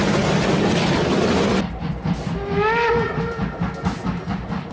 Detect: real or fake real